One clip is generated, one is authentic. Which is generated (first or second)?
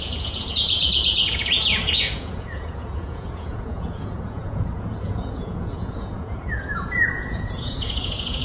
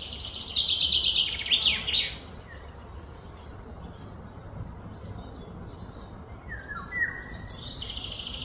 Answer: first